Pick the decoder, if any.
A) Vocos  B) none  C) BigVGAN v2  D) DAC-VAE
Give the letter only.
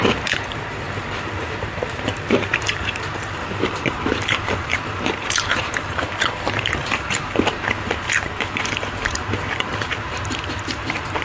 C